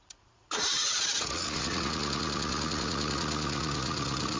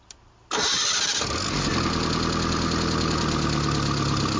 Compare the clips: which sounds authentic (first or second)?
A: second